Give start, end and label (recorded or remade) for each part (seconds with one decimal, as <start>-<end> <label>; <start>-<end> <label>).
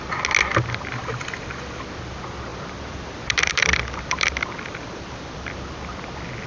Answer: 0.0-2.5 recorded; 2.5-5.6 remade; 5.6-6.5 recorded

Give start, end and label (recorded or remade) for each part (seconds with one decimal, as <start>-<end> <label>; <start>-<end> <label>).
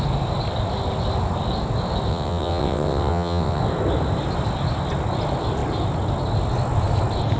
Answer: 0.0-2.1 recorded; 2.1-3.6 remade; 3.6-7.4 recorded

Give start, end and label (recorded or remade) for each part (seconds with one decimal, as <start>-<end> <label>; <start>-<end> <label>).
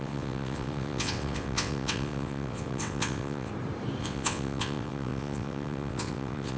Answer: 0.0-3.5 remade; 3.5-4.0 recorded; 4.0-6.6 remade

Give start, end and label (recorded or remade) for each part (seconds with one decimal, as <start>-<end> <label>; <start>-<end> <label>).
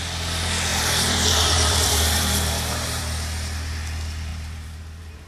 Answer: 0.0-0.7 recorded; 0.7-3.0 remade; 3.0-4.3 recorded; 4.3-5.3 remade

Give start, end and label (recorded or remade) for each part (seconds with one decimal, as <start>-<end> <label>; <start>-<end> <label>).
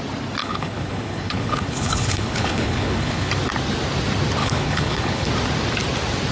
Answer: 0.0-0.4 recorded; 0.4-3.3 remade; 3.3-4.4 recorded; 4.4-5.3 remade; 5.3-6.3 recorded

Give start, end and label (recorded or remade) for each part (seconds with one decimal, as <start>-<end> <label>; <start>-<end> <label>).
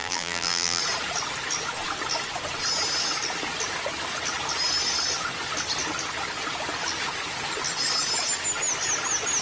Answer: 0.0-0.8 remade; 0.8-9.4 recorded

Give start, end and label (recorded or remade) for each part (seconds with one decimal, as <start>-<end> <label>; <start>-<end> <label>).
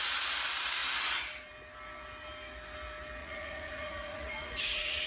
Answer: 0.0-3.2 recorded; 3.2-5.1 remade